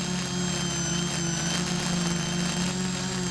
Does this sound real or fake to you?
real